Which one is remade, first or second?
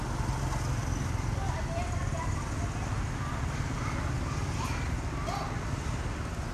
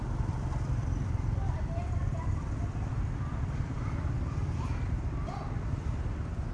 second